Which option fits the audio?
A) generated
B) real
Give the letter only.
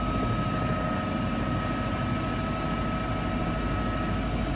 B